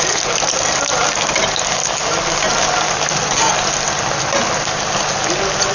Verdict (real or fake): real